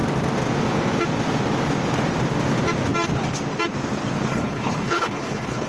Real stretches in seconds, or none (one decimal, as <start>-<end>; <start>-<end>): 0.0-4.3